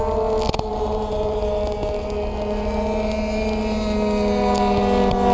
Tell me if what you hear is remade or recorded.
recorded